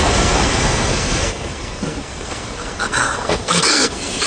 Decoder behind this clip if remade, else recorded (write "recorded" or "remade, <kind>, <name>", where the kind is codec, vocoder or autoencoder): remade, codec, SNAC